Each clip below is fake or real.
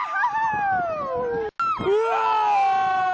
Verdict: real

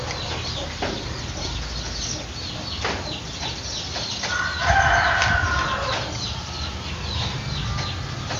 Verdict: real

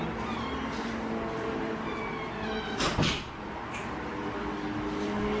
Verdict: real